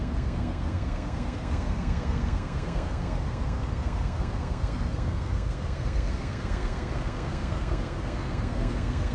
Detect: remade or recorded remade